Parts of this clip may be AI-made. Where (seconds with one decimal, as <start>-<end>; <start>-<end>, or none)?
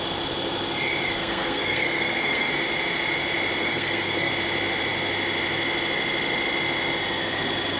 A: 1.2-2.5; 3.6-4.3